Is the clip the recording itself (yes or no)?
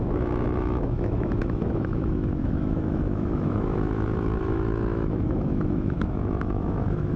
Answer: no